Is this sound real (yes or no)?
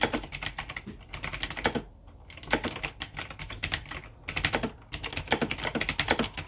yes